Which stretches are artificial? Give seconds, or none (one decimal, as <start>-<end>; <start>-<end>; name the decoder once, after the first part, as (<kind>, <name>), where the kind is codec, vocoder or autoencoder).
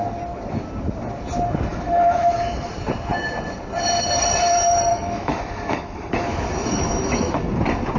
1.7-2.7 (autoencoder, DAC-VAE); 4.9-7.6